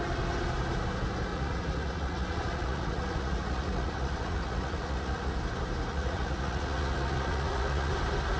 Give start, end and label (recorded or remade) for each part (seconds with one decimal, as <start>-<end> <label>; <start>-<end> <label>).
0.0-1.3 recorded; 1.3-5.4 remade; 5.4-5.9 recorded; 5.9-7.9 remade; 7.9-8.4 recorded